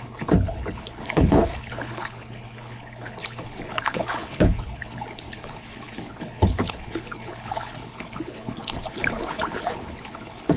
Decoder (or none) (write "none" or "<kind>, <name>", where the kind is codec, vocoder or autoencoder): codec, HILCodec